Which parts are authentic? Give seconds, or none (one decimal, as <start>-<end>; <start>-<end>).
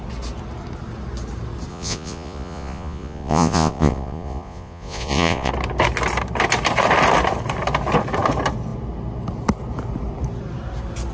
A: 0.0-1.7; 5.5-11.1